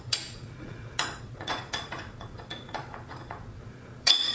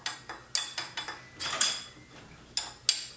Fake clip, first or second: first